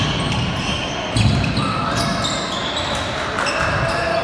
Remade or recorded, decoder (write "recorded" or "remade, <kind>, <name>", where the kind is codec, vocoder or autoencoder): recorded